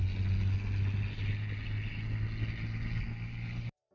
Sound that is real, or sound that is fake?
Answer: real